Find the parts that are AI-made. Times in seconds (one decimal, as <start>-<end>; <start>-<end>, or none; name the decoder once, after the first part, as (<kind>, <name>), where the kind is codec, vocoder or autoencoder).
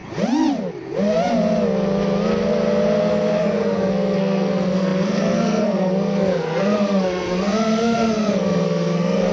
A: 3.0-9.3 (codec, SNAC)